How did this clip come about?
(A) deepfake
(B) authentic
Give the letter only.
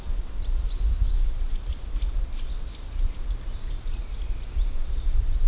B